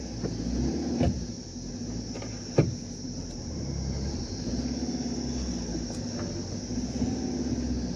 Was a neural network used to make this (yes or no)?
no